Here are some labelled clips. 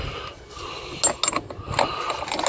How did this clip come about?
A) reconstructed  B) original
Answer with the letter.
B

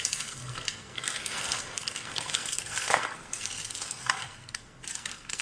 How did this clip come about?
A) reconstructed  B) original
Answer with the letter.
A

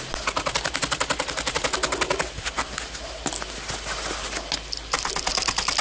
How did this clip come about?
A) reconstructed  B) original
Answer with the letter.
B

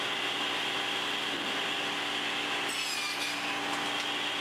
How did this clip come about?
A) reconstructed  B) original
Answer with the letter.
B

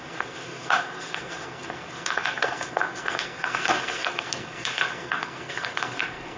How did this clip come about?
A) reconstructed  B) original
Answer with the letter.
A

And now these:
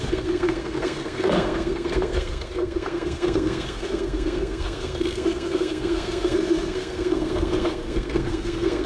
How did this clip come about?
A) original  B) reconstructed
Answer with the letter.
B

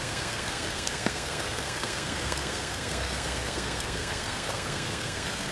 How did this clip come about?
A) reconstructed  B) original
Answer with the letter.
A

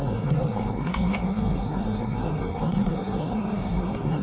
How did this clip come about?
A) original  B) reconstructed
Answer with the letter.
B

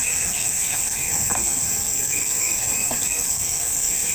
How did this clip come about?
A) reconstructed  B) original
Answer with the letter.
A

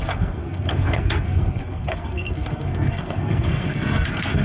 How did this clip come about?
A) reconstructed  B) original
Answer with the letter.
A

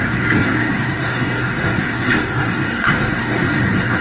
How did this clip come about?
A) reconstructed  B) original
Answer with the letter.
A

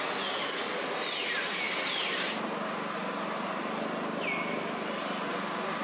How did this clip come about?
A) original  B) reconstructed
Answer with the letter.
A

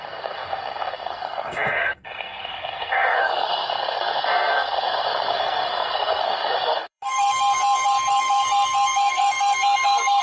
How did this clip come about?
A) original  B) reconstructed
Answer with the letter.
B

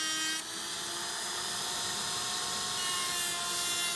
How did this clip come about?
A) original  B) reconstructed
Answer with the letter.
A